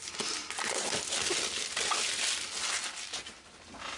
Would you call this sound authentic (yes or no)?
yes